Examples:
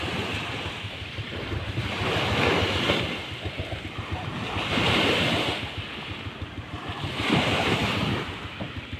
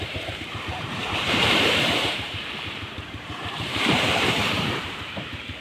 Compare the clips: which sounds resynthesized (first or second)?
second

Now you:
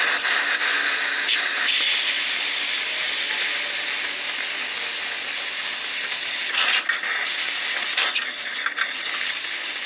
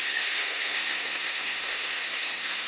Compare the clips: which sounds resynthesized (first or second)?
second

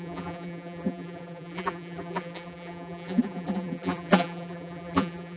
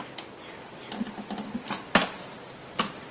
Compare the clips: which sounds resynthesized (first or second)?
first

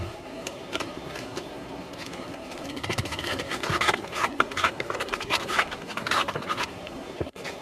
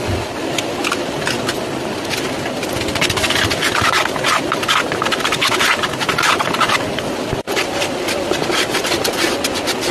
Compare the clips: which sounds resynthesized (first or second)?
first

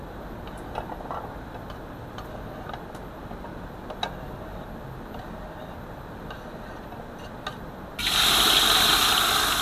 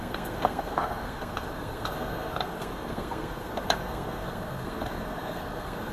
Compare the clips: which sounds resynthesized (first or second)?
second